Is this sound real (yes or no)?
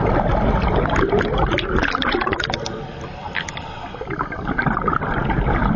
yes